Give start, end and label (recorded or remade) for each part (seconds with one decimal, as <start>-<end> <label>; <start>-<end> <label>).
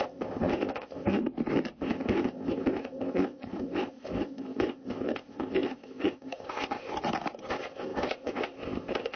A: 0.0-1.2 remade; 1.2-1.8 recorded; 1.8-6.9 remade; 6.9-7.5 recorded; 7.5-9.2 remade